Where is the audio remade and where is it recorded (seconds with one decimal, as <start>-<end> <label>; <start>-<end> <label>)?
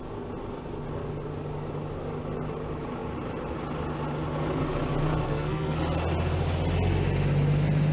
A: 0.0-5.2 recorded; 5.2-5.8 remade; 5.8-7.9 recorded